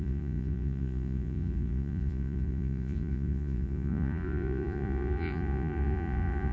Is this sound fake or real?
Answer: fake